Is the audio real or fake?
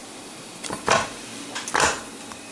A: real